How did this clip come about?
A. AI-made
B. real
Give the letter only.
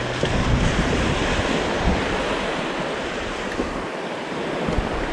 A